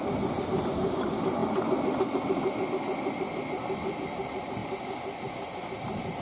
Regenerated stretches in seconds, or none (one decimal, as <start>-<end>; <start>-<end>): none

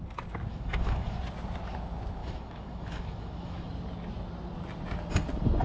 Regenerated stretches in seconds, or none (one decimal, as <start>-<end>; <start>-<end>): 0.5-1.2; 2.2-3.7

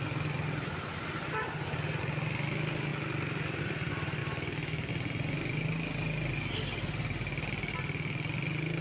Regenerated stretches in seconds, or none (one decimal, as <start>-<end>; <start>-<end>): 4.2-4.9

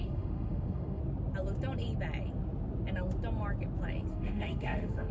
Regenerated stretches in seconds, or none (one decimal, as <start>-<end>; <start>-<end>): 0.0-1.0; 4.1-5.1

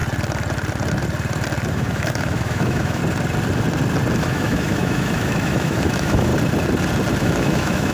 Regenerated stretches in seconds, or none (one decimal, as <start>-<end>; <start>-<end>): 1.7-3.0; 4.2-6.3; 7.2-7.9

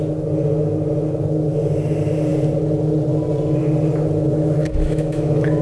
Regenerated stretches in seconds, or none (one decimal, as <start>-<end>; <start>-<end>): 4.6-5.6